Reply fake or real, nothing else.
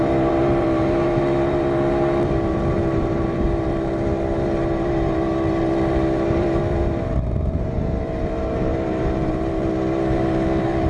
fake